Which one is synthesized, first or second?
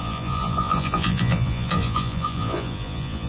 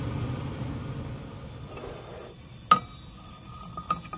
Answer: first